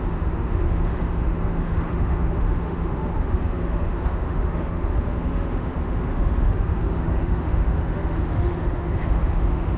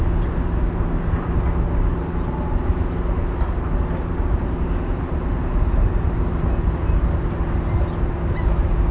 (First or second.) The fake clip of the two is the first